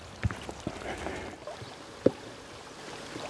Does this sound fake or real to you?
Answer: real